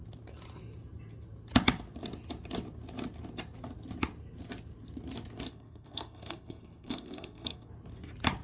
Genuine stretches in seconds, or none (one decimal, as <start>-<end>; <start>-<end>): 0.0-5.5; 7.7-8.4